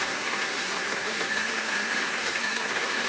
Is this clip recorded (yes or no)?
no